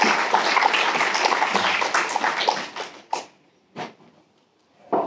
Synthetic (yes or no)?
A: yes